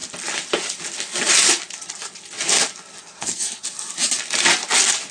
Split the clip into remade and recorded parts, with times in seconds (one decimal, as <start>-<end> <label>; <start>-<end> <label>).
0.0-3.0 recorded; 3.0-3.9 remade; 3.9-5.1 recorded